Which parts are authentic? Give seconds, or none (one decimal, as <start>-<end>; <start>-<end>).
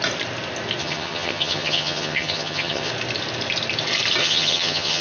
0.0-0.8; 2.9-4.2